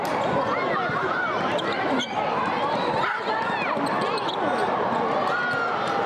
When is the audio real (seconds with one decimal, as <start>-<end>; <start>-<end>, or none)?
0.0-1.0; 3.2-4.6; 5.4-6.1